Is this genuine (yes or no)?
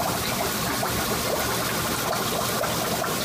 yes